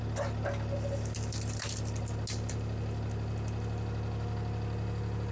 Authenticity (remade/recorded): recorded